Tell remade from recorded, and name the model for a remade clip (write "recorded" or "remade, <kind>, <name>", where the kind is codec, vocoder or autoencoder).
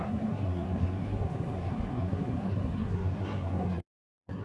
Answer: remade, codec, SNAC